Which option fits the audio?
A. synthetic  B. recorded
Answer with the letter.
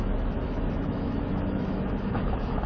A